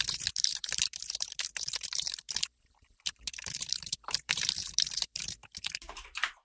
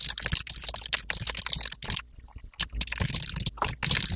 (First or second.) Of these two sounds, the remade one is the first